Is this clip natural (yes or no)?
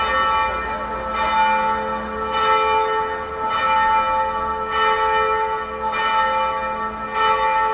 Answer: yes